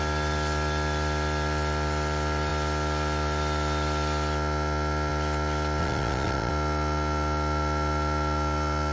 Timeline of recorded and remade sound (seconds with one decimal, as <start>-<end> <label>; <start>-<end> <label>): 0.0-5.8 recorded; 5.8-6.5 remade; 6.5-8.9 recorded